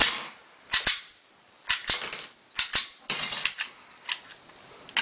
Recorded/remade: recorded